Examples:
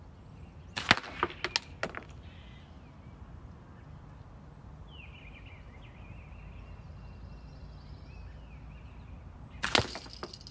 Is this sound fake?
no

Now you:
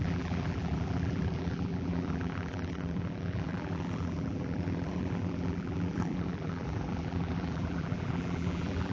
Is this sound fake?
yes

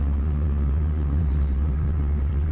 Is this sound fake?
yes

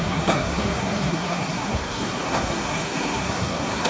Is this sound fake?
yes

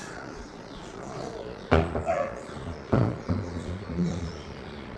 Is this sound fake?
yes